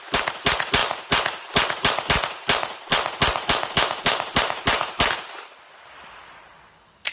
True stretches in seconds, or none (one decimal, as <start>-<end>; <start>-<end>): 0.0-7.1